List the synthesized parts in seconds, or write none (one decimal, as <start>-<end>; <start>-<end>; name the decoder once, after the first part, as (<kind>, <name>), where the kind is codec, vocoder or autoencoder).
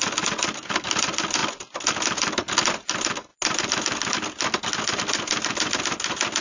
none